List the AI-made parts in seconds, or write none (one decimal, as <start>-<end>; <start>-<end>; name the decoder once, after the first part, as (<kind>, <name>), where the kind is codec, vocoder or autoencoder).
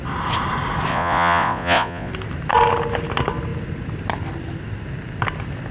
0.9-2.1 (vocoder, Vocos)